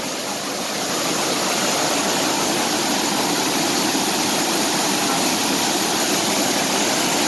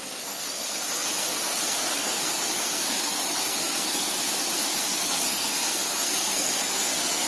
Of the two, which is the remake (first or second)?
second